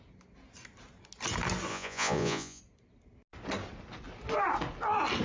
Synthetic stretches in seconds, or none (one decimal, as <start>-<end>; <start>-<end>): 1.7-2.6